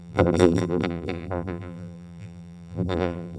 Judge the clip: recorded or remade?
remade